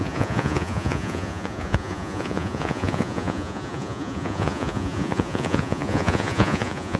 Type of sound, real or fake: fake